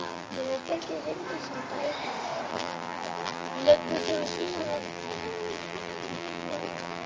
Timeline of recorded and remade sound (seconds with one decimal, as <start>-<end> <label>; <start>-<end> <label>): 0.0-0.7 remade; 0.7-2.5 recorded; 2.5-7.1 remade